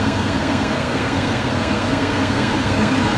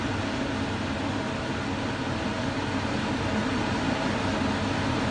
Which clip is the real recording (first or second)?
second